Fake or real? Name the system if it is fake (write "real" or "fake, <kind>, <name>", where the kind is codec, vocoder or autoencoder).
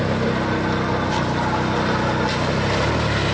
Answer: real